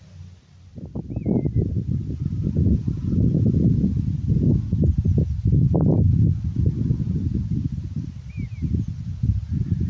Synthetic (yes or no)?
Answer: no